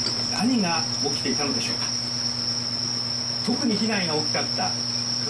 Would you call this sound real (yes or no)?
yes